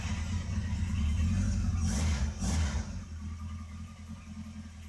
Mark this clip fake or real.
real